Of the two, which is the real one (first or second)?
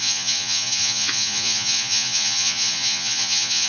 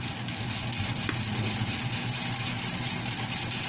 second